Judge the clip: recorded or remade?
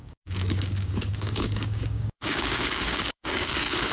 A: remade